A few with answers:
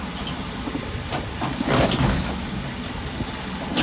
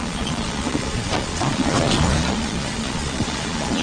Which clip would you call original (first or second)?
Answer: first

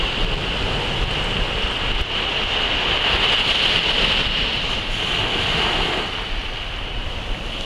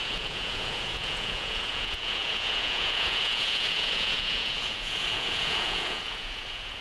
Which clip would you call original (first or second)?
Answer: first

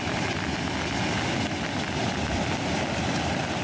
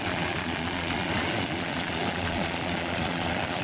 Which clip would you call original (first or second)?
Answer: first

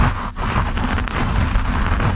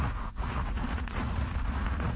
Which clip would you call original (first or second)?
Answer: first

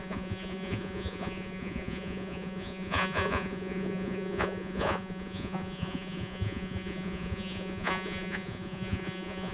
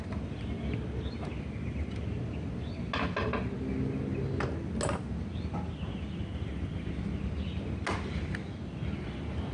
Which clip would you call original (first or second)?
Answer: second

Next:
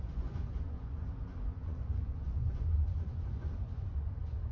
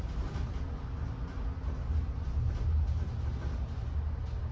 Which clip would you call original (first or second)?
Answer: second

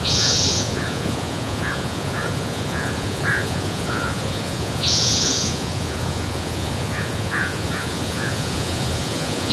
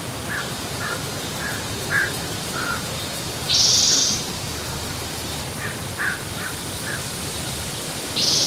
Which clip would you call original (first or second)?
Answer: second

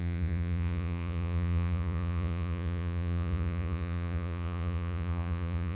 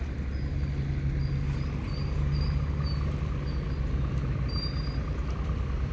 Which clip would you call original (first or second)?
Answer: second